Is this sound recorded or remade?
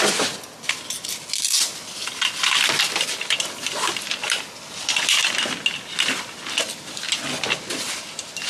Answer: recorded